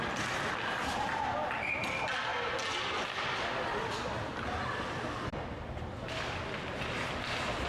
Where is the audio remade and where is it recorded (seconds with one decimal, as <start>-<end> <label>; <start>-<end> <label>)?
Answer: 0.0-7.7 recorded